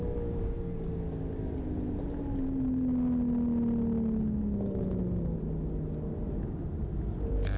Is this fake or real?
real